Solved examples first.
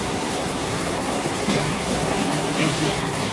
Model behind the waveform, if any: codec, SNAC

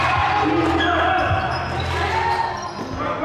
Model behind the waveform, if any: none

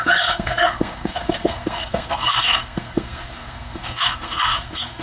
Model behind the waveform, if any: codec, SNAC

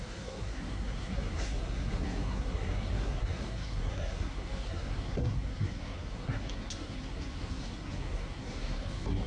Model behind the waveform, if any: codec, SNAC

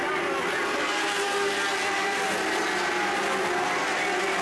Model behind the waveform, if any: none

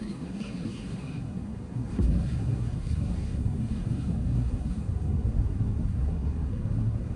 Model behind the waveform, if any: codec, SNAC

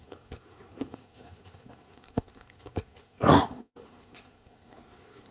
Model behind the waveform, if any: codec, SNAC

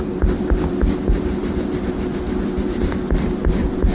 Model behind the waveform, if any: none